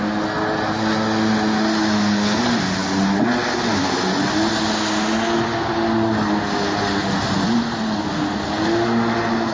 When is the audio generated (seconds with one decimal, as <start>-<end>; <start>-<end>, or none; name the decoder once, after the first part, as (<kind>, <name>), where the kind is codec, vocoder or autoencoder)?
none